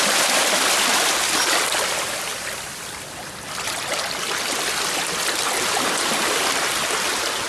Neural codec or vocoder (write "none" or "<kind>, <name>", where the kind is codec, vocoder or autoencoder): none